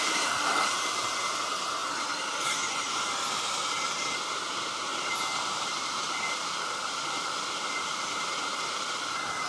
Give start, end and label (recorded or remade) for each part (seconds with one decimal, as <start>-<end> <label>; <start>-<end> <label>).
0.0-4.9 recorded; 4.9-6.5 remade; 6.5-9.5 recorded

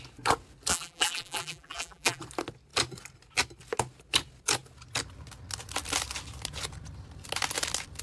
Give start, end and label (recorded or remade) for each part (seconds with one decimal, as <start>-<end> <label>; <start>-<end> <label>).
0.0-0.7 recorded; 0.7-2.2 remade; 2.2-8.0 recorded

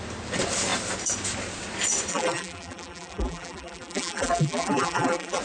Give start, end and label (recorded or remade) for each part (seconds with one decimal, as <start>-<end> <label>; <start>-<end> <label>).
0.0-2.1 recorded; 2.1-5.4 remade

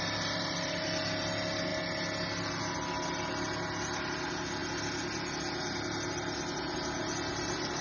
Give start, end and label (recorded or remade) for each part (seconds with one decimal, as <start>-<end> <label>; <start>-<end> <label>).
0.0-7.8 recorded

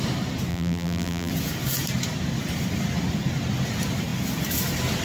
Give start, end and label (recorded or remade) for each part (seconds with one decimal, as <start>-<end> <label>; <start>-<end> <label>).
0.0-0.5 recorded; 0.5-1.3 remade; 1.3-5.0 recorded